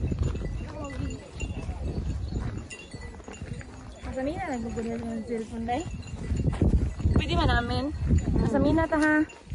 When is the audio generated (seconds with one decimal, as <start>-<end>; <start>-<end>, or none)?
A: none